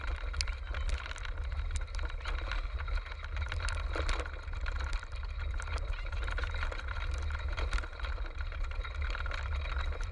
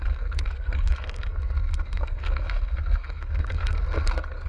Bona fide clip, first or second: first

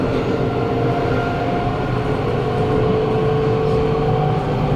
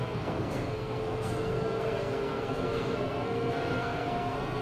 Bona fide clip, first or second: first